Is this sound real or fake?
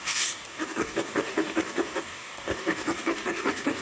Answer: fake